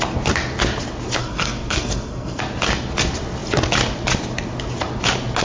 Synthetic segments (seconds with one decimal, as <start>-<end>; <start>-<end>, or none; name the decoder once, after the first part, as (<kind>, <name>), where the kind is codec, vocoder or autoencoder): 1.2-2.4 (codec, SNAC)